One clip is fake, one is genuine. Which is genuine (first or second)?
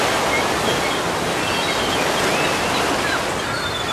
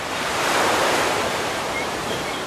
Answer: first